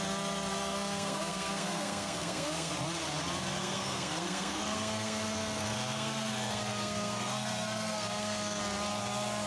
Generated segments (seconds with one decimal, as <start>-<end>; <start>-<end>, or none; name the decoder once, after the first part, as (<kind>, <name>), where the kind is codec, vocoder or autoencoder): 0.5-2.7 (codec, SNAC); 3.6-8.6